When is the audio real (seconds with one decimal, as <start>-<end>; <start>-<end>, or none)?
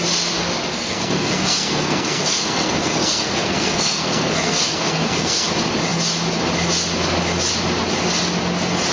0.0-0.7; 5.5-8.9